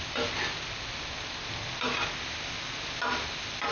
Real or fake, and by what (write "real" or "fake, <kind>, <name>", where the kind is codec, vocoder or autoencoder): real